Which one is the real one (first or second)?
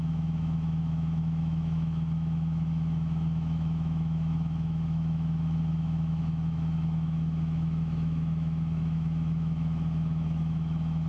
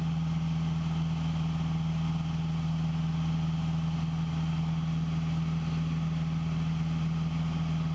second